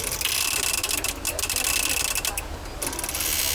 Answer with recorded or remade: recorded